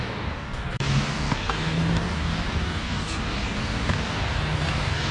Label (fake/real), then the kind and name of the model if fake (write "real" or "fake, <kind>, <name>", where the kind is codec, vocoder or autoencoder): fake, codec, DAC